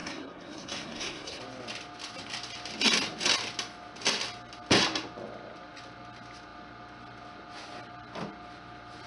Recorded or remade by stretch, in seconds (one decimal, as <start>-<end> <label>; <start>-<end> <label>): 0.0-1.4 remade; 1.4-9.1 recorded